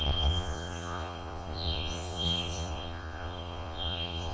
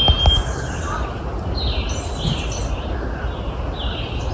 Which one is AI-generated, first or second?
first